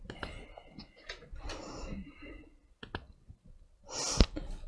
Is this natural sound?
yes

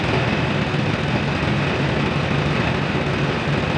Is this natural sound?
yes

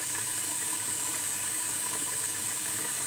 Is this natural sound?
no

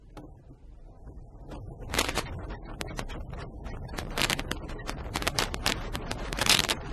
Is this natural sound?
no